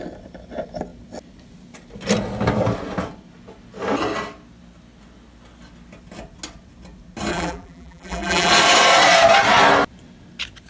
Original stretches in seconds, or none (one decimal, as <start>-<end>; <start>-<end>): 0.0-7.3; 8.5-10.7

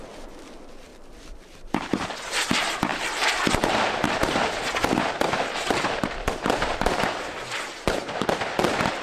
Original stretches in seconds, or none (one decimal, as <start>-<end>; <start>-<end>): 0.0-2.9; 4.5-9.0